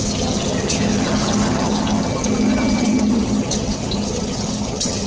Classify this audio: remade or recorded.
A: remade